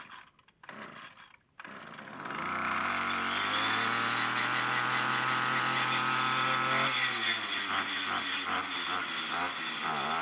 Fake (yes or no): no